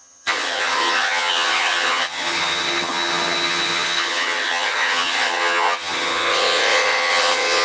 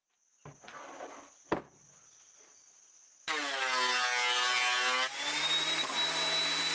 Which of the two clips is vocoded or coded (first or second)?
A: first